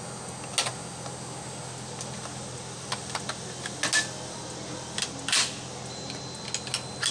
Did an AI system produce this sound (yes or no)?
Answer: no